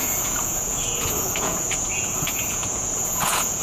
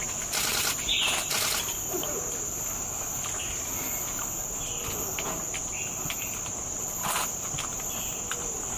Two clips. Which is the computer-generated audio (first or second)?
first